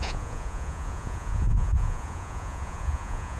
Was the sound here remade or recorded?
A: remade